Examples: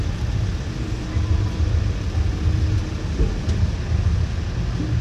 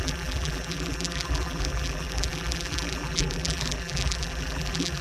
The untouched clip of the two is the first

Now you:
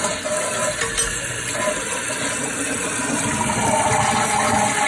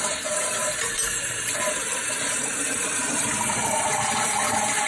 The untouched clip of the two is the first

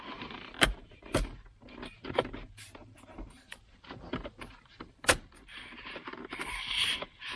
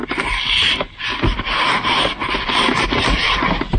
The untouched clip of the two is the second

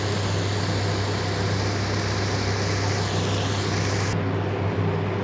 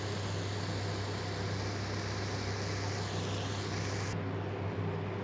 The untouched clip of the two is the second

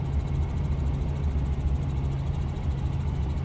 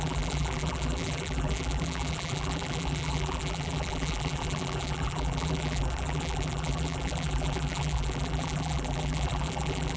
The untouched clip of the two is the first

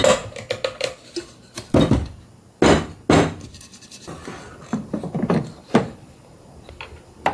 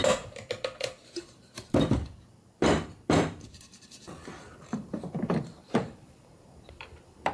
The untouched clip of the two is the first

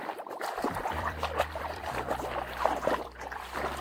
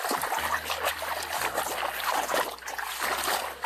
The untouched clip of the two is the second